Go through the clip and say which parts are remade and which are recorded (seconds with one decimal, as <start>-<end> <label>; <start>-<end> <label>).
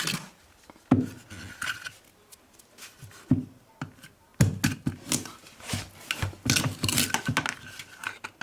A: 0.0-8.4 recorded